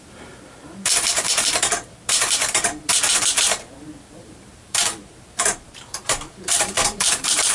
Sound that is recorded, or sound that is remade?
remade